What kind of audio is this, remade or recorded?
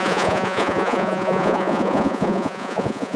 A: remade